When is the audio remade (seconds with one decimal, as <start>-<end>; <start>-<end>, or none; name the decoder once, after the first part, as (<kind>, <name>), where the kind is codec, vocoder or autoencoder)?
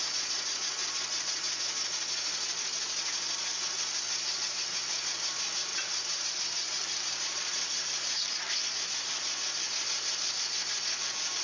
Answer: 5.7-8.5 (vocoder, BigVGAN v2)